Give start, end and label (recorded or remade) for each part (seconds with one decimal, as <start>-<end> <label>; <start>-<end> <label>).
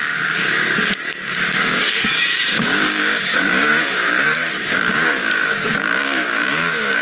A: 0.0-7.0 remade